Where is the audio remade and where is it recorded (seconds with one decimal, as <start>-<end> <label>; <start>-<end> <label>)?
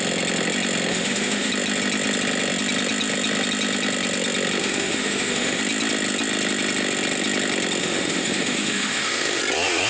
0.0-0.9 recorded; 0.9-1.5 remade; 1.5-4.6 recorded; 4.6-5.6 remade; 5.6-7.8 recorded; 7.8-9.4 remade; 9.4-9.9 recorded